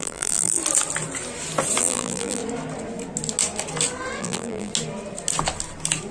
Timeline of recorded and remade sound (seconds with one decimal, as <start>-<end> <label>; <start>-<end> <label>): 0.0-0.6 remade; 0.6-1.8 recorded; 1.8-2.4 remade; 2.4-4.2 recorded; 4.2-4.7 remade; 4.7-6.1 recorded